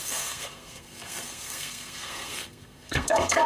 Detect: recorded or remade remade